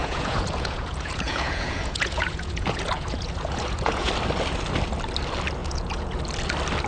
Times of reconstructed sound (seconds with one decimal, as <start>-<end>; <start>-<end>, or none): 0.0-4.1; 5.6-6.2